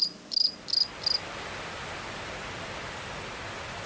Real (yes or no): yes